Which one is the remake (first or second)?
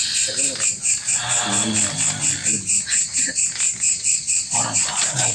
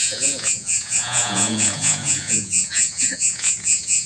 second